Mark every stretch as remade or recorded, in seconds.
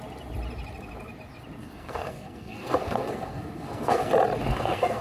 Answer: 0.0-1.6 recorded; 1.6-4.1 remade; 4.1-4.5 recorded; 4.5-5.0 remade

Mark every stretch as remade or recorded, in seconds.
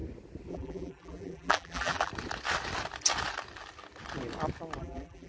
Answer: 0.0-0.5 recorded; 0.5-2.1 remade; 2.1-4.8 recorded; 4.8-5.3 remade